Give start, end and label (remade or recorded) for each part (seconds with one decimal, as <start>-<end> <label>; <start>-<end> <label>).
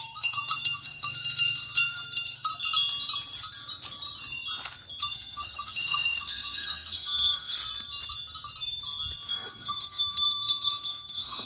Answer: 0.0-2.5 remade; 2.5-5.0 recorded; 5.0-7.6 remade; 7.6-9.3 recorded; 9.3-11.5 remade